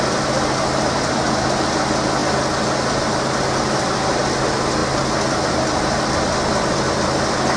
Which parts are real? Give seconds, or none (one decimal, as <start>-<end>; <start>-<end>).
0.0-7.6